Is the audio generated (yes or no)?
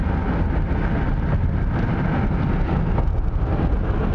no